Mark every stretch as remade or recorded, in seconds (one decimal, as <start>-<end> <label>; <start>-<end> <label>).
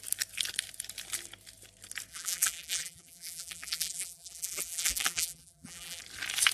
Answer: 0.0-2.1 recorded; 2.1-6.0 remade; 6.0-6.5 recorded